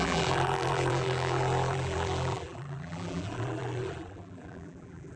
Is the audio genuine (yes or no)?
no